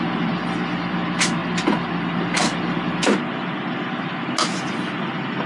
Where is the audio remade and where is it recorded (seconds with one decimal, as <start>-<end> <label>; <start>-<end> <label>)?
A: 0.0-5.5 recorded